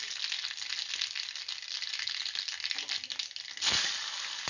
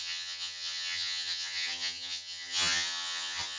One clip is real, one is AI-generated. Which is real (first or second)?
first